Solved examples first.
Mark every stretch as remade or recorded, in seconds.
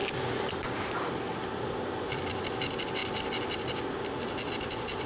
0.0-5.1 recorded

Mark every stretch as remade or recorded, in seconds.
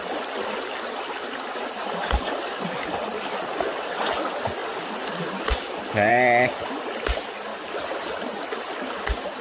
0.0-7.5 remade; 7.5-8.1 recorded; 8.1-9.4 remade